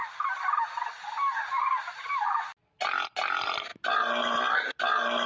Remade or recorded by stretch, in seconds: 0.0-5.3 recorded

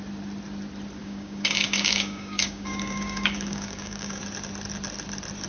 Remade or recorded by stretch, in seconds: 0.0-1.0 recorded; 1.0-4.2 remade; 4.2-5.5 recorded